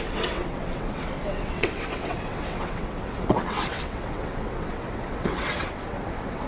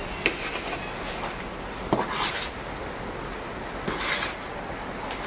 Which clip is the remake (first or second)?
first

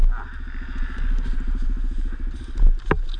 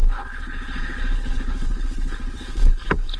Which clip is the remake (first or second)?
second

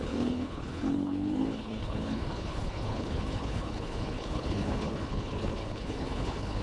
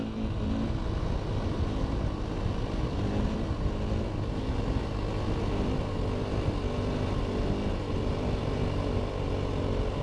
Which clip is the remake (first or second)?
first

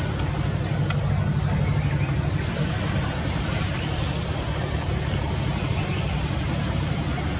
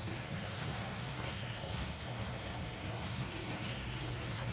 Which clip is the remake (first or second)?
second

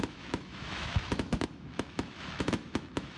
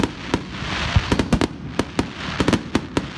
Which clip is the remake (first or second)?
first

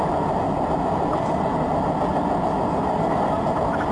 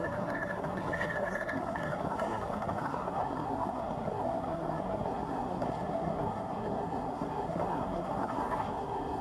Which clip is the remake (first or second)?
second